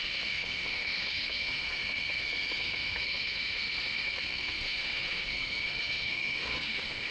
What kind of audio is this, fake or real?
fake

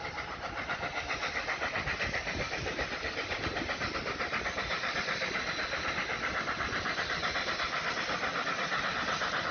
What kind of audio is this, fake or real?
real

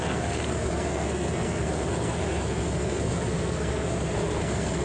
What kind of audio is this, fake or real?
fake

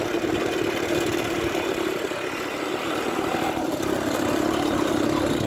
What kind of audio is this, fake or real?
real